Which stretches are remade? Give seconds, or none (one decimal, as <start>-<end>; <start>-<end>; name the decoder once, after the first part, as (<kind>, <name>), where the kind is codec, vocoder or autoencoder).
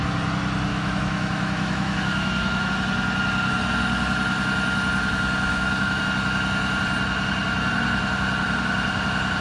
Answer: 0.7-2.7 (autoencoder, DAC-VAE); 5.5-6.0